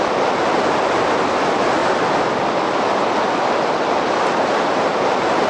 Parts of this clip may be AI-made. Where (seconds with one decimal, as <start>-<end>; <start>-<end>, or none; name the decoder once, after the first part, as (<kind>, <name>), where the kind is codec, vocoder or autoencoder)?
none